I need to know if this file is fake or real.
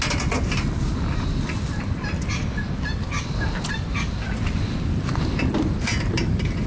real